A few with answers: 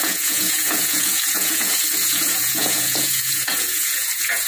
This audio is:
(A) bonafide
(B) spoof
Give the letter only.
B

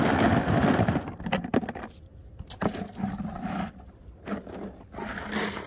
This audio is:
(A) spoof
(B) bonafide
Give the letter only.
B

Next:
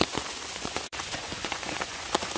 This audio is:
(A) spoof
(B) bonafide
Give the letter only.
A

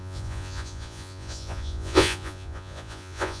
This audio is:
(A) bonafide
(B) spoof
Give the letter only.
B